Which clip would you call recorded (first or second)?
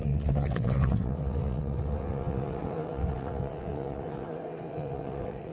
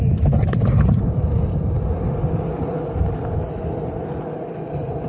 second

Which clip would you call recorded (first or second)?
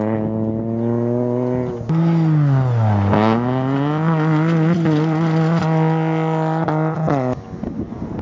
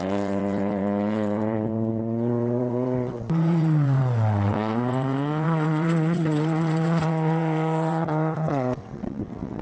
first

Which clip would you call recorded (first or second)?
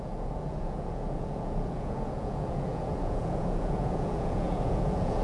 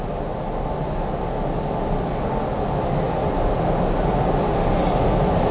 second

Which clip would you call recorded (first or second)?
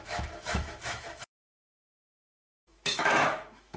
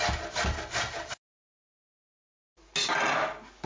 second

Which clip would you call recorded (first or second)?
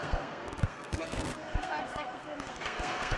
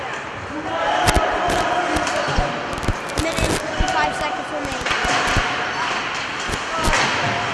second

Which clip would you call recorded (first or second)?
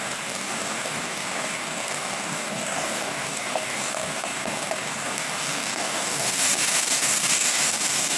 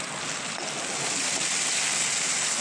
second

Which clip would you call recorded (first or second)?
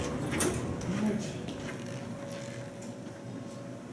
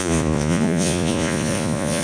first